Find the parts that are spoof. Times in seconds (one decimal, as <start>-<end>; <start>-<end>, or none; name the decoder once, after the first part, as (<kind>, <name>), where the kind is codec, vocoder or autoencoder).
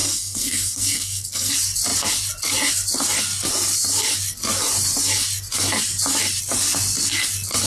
0.0-1.5 (codec, SNAC)